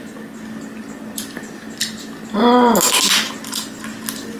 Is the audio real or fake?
real